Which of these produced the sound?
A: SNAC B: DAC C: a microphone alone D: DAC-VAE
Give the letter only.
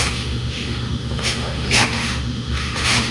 D